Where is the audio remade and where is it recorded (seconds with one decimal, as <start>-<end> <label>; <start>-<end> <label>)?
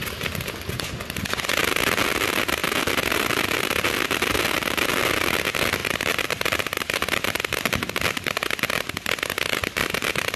0.0-2.6 recorded; 2.6-5.0 remade; 5.0-5.8 recorded; 5.8-8.2 remade; 8.2-9.6 recorded; 9.6-10.4 remade